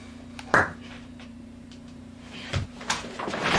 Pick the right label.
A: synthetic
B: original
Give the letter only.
A